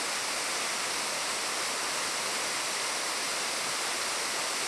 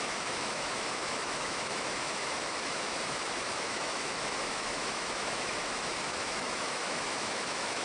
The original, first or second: first